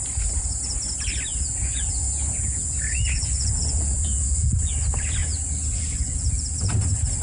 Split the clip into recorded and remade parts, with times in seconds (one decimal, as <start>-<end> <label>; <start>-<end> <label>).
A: 0.0-1.3 recorded; 1.3-4.7 remade; 4.7-5.2 recorded; 5.2-6.7 remade; 6.7-7.2 recorded

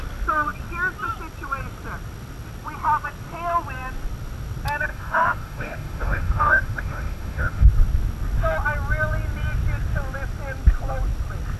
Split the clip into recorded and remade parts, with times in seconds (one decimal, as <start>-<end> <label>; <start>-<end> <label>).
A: 0.0-4.9 recorded; 4.9-7.7 remade; 7.7-11.6 recorded

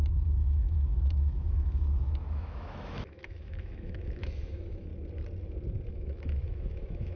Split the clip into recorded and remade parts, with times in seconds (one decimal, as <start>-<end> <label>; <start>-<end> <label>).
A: 0.0-4.9 remade; 4.9-5.9 recorded; 5.9-7.2 remade

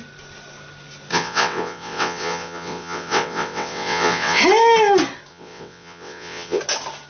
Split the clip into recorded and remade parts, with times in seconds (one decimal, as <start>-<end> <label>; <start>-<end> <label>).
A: 0.0-1.1 recorded; 1.1-4.4 remade; 4.4-5.3 recorded; 5.3-6.6 remade; 6.6-7.1 recorded

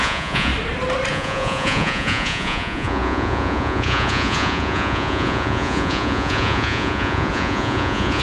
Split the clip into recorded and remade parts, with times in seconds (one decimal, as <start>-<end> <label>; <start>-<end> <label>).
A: 0.0-0.5 remade; 0.5-1.1 recorded; 1.1-8.2 remade